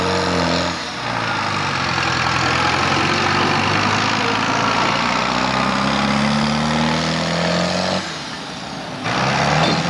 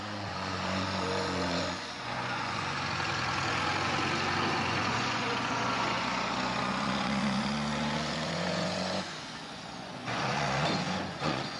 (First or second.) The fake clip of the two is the second